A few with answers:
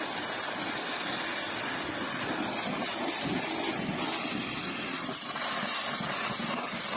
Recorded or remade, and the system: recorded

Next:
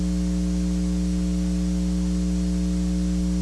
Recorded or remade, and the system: recorded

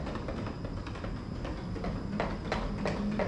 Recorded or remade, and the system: recorded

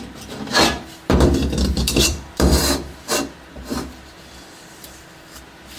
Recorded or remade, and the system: remade, vocoder, BigVGAN v2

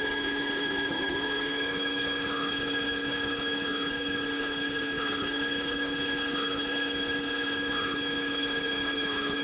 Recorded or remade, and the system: remade, codec, HILCodec